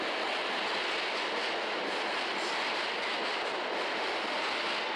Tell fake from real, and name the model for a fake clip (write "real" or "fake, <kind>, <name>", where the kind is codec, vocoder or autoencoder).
real